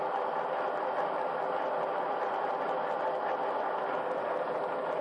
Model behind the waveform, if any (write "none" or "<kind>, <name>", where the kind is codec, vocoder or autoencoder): none